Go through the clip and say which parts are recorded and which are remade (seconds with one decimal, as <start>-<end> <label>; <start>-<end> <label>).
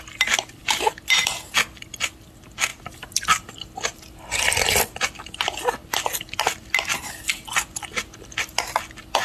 0.0-9.2 recorded